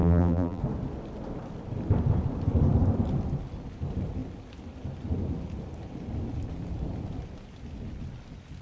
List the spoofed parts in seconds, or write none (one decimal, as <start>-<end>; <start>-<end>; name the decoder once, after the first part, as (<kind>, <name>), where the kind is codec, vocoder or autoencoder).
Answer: 0.0-0.6 (vocoder, BigVGAN v2)

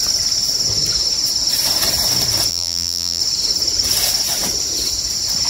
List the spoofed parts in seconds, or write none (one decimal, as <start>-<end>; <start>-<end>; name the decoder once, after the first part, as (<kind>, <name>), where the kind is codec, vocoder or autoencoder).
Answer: 2.5-3.2 (vocoder, BigVGAN v2)